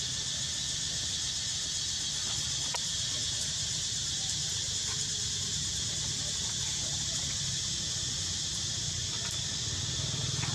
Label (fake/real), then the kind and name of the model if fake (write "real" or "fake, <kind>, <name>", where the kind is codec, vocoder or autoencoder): real